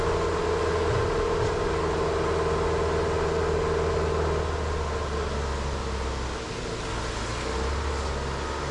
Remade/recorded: recorded